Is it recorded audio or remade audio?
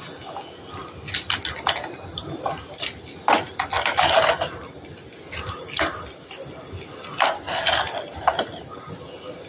recorded